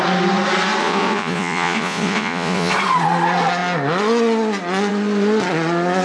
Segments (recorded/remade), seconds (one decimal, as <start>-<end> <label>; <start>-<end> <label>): 0.0-0.8 recorded; 0.8-2.7 remade; 2.7-6.0 recorded